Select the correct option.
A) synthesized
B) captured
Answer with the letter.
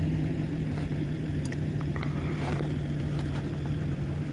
A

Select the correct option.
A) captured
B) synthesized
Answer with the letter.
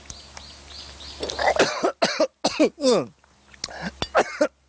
A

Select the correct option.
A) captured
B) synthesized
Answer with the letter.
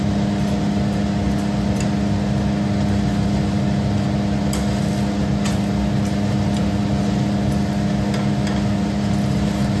A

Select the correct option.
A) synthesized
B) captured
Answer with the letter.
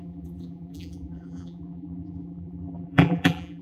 A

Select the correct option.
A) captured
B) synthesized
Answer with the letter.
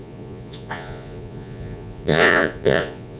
B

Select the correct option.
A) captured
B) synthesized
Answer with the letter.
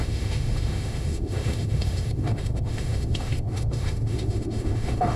B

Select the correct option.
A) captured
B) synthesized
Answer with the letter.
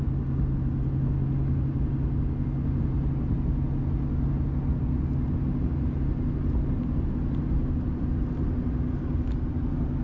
A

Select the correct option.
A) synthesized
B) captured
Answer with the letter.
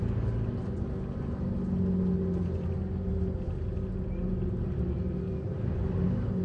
B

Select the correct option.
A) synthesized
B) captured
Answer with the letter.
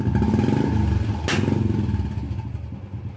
B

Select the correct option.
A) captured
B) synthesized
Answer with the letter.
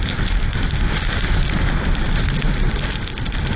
A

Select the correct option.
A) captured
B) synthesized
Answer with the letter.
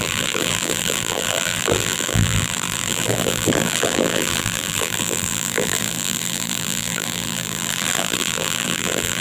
B